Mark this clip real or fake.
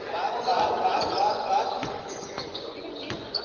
fake